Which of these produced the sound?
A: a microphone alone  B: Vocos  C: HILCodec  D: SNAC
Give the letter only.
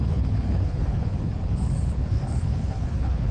C